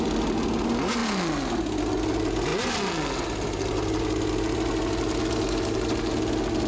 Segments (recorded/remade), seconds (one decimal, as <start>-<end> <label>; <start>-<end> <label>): 0.0-6.7 recorded